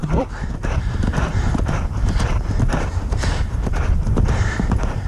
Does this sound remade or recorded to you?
remade